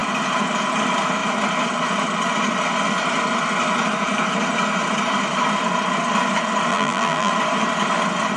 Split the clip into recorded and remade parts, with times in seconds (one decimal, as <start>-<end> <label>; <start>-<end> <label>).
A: 0.0-6.7 recorded; 6.7-7.3 remade; 7.3-8.4 recorded